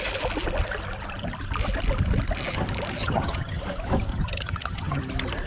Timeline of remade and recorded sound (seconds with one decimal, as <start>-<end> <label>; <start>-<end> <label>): 0.0-3.0 recorded; 3.0-3.6 remade; 3.6-4.1 recorded; 4.1-5.0 remade; 5.0-5.5 recorded